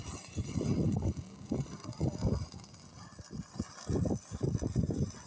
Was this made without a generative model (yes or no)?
yes